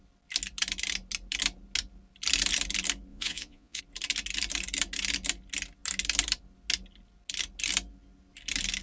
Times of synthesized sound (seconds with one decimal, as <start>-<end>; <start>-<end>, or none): 3.1-3.8

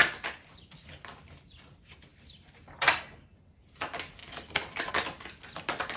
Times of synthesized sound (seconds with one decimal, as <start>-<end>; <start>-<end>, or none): 2.1-3.0